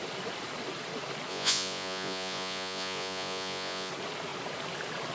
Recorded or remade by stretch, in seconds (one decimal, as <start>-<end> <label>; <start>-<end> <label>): 0.0-1.3 recorded; 1.3-3.9 remade; 3.9-5.1 recorded